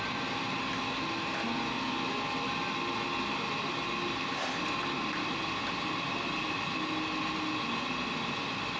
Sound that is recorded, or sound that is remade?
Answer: recorded